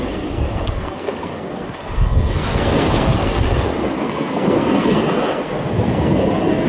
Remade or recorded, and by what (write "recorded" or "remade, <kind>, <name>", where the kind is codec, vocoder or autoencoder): remade, codec, SNAC